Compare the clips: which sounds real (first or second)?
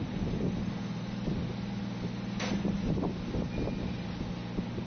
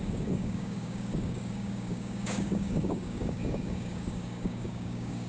first